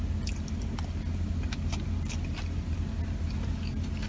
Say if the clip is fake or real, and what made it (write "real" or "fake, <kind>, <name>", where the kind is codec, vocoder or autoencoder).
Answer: real